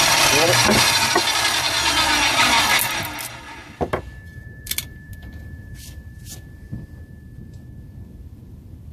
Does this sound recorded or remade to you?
remade